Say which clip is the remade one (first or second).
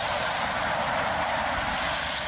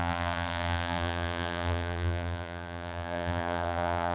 second